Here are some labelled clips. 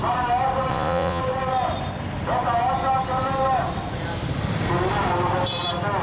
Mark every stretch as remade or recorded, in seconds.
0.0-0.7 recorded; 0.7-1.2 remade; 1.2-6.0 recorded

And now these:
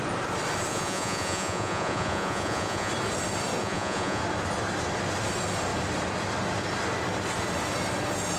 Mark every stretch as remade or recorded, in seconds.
0.0-0.7 recorded; 0.7-2.9 remade; 2.9-3.6 recorded; 3.6-4.2 remade; 4.2-8.4 recorded